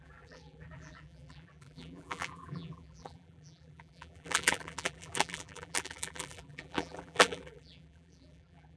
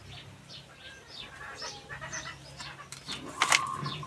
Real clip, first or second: second